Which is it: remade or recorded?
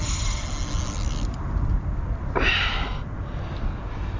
recorded